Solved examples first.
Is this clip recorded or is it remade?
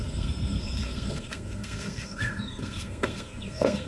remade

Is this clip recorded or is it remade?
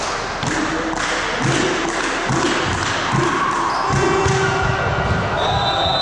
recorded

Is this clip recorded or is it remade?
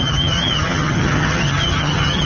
remade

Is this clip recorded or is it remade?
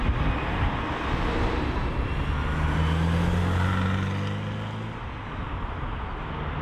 recorded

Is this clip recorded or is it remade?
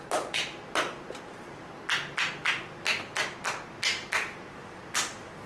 recorded